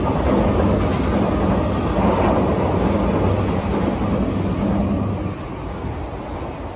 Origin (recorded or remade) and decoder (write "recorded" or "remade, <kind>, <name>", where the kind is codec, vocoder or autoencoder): recorded